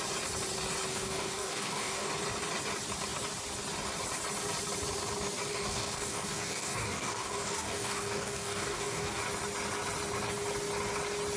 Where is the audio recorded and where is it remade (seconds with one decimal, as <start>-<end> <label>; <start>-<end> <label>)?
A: 0.0-0.9 recorded; 0.9-2.1 remade; 2.1-5.5 recorded; 5.5-9.2 remade; 9.2-11.4 recorded